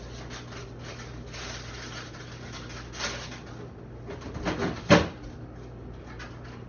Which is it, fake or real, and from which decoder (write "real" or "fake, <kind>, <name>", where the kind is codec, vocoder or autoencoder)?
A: real